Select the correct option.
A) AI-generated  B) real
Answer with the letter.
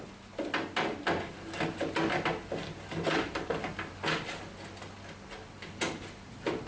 B